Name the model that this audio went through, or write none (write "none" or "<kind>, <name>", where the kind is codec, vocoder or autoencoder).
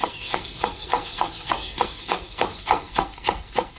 codec, SNAC